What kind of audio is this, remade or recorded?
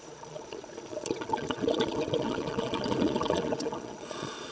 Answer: remade